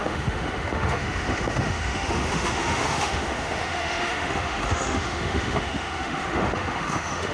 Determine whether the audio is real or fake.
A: fake